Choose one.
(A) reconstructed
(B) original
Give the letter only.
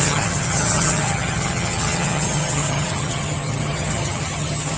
A